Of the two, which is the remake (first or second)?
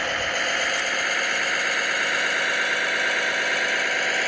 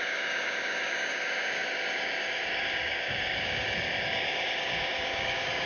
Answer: second